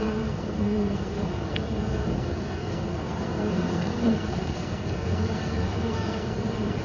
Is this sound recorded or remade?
remade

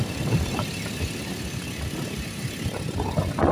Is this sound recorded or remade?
recorded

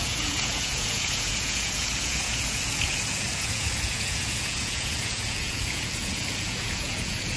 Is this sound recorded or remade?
remade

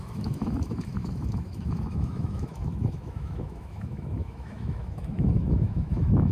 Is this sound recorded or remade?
remade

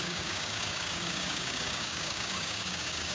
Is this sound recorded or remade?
remade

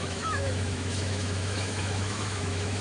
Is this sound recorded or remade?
remade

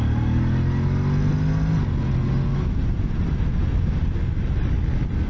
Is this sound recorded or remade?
recorded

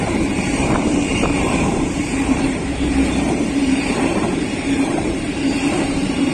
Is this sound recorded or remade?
remade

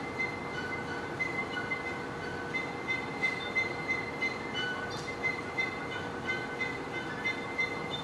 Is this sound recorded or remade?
recorded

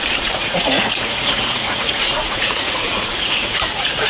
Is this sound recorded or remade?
remade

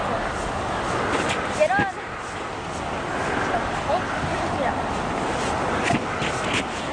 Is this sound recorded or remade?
recorded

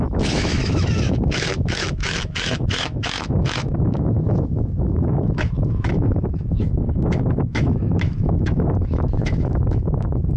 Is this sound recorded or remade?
remade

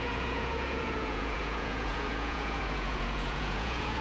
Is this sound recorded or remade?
remade